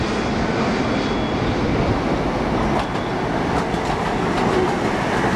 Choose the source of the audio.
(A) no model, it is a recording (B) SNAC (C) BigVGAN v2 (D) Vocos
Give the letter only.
A